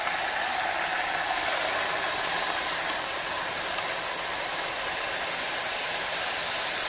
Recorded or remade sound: recorded